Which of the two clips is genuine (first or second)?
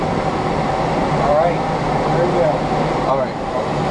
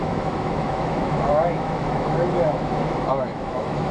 first